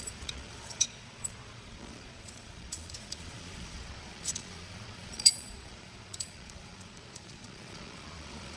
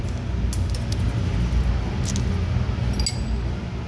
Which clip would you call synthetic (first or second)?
first